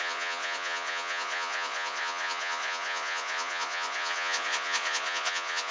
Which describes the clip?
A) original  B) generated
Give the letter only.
B